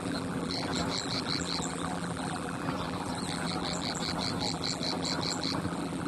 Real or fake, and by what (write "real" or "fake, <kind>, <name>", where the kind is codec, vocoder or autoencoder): fake, vocoder, BigVGAN v2